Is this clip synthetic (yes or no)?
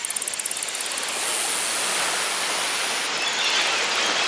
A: no